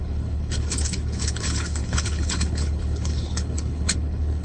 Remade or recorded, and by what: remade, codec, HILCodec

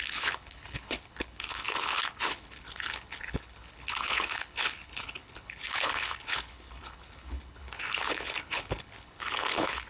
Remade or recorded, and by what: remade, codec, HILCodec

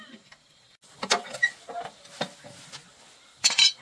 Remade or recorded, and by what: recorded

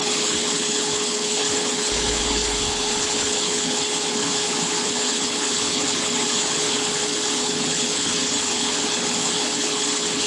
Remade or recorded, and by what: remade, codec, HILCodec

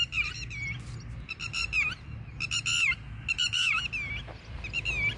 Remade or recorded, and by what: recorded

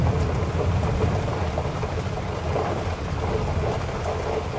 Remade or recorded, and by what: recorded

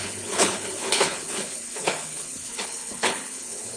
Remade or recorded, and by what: remade, codec, HILCodec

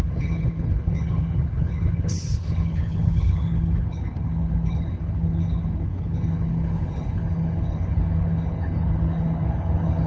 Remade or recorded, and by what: remade, codec, HILCodec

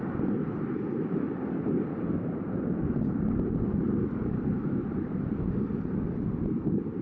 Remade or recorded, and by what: recorded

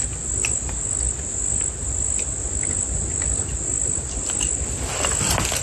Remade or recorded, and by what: recorded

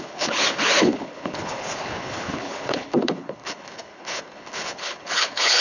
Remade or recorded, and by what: remade, codec, HILCodec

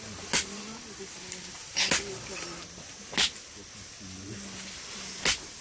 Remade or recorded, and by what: recorded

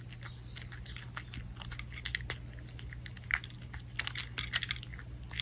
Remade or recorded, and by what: recorded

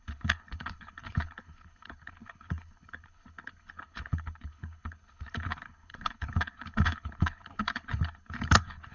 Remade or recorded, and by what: remade, codec, HILCodec